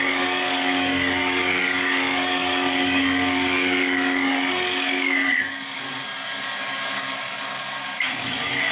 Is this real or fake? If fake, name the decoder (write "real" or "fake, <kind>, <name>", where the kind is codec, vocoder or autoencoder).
fake, codec, DAC